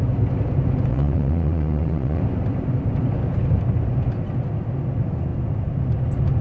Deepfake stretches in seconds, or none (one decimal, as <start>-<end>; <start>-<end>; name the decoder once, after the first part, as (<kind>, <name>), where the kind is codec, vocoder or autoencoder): 0.9-2.2 (vocoder, Vocos)